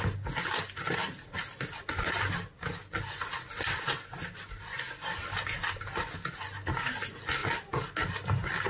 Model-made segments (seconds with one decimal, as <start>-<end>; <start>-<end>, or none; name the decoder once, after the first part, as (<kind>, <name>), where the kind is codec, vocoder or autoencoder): none